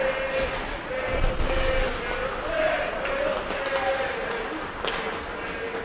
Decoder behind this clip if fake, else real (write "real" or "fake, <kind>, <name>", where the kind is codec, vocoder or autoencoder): real